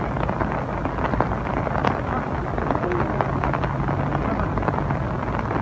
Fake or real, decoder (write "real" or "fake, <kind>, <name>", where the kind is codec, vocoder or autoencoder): real